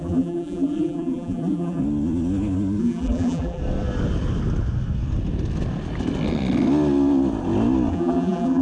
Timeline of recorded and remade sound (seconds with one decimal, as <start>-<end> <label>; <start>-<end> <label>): 0.0-1.8 remade; 1.8-2.8 recorded; 2.8-3.6 remade; 3.6-7.9 recorded; 7.9-8.6 remade